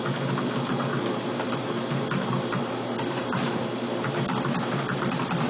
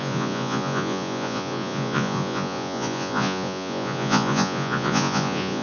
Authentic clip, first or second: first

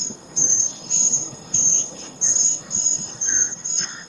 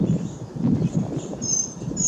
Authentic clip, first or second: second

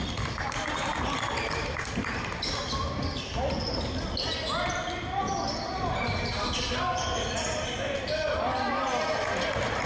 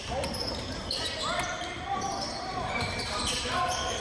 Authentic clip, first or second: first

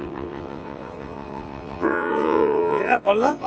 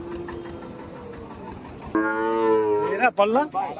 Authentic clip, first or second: second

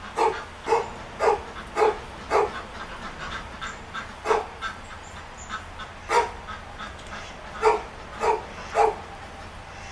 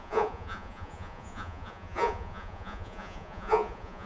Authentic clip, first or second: first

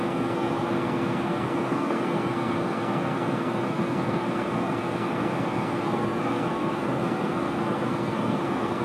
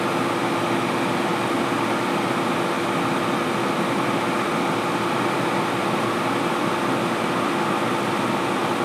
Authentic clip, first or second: second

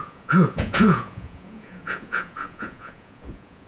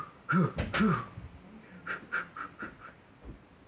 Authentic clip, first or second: second